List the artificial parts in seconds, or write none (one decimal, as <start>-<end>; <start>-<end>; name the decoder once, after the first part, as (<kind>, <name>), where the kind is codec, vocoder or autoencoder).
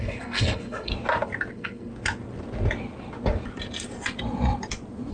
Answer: 0.0-0.9 (codec, SNAC); 1.5-1.9